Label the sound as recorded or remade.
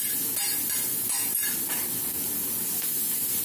recorded